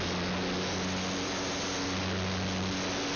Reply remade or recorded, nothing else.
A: recorded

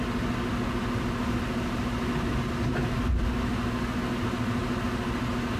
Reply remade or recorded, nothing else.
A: recorded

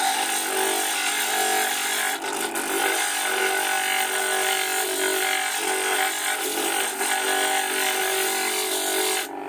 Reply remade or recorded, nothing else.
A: recorded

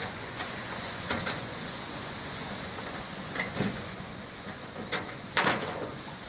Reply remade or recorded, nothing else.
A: remade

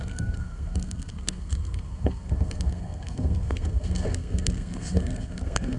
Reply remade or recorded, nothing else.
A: remade